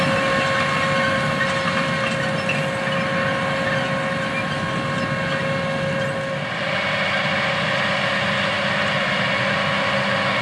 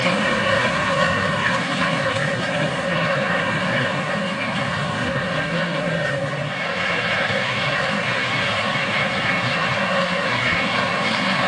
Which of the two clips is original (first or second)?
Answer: first